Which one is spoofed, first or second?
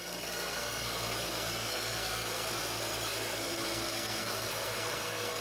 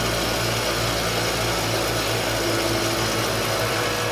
first